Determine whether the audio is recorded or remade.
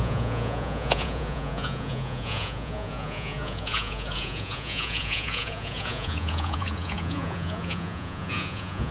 remade